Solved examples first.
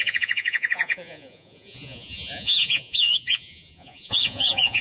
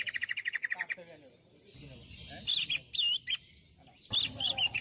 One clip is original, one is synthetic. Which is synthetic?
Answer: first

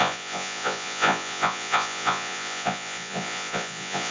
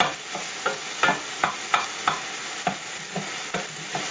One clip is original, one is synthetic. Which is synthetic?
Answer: first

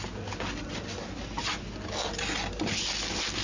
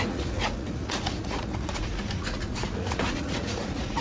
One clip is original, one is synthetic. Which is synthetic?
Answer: second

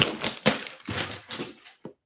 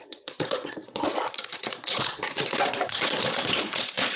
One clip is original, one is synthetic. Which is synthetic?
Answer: second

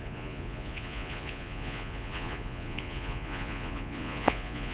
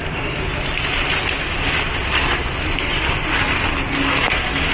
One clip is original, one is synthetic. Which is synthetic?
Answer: first